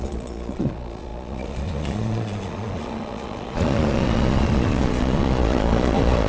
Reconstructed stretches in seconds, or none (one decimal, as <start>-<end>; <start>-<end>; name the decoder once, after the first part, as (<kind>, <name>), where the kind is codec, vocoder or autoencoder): 0.0-6.3 (vocoder, Vocos)